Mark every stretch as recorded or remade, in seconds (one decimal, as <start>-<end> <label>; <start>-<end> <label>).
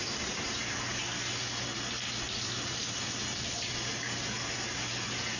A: 0.0-5.4 recorded